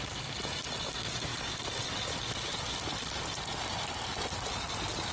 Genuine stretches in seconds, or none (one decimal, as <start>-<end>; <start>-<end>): 0.0-5.1